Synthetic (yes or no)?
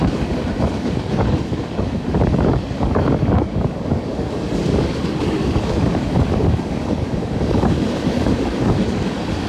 yes